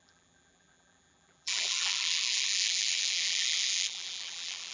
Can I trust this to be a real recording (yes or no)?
no